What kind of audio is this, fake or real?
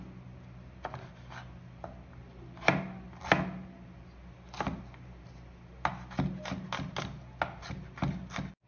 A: real